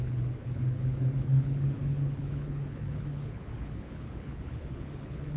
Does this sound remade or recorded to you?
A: remade